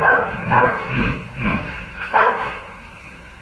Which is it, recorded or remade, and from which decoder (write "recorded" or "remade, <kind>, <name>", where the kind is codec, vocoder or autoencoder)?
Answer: remade, codec, SNAC